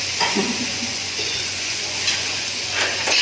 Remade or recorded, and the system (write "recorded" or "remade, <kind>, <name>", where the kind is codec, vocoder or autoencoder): remade, vocoder, Vocos